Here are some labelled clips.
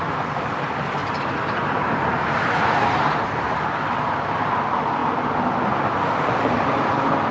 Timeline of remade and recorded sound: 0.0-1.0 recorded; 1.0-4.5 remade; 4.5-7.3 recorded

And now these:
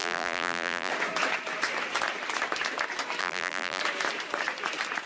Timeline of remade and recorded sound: 0.0-0.9 remade; 0.9-3.2 recorded; 3.2-3.8 remade; 3.8-5.1 recorded

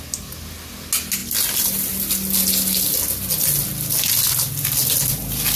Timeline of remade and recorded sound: 0.0-5.6 recorded

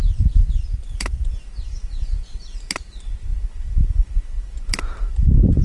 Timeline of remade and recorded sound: 0.0-5.6 remade